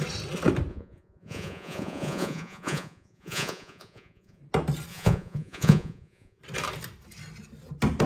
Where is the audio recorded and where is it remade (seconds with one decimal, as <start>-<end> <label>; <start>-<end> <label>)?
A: 0.0-0.7 recorded; 0.7-4.4 remade; 4.4-4.9 recorded; 4.9-6.4 remade; 6.4-8.1 recorded